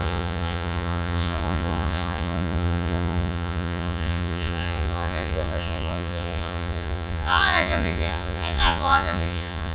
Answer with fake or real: fake